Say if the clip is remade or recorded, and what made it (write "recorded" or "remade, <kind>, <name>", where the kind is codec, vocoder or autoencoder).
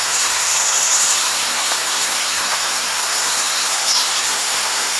remade, codec, SNAC